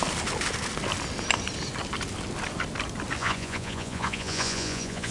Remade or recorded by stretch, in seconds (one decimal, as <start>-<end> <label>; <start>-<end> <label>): 0.0-3.2 recorded; 3.2-5.1 remade